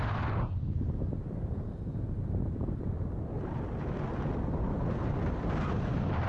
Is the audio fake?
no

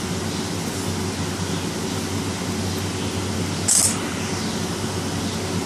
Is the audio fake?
no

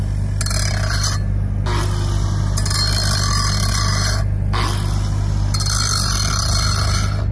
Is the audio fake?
no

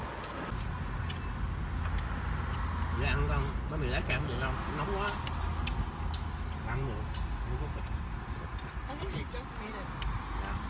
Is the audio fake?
no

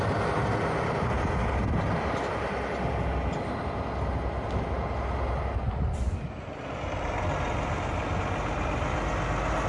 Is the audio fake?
no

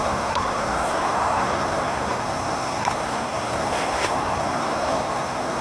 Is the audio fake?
yes